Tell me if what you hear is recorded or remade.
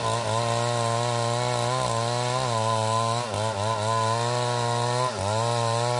recorded